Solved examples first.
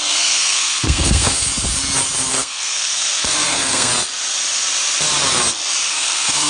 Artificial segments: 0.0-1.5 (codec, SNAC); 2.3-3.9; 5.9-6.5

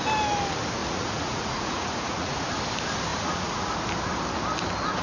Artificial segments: 0.8-2.5 (vocoder, Vocos); 3.1-3.7